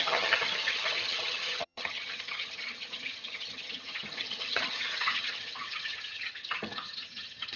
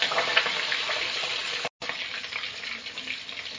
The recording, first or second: second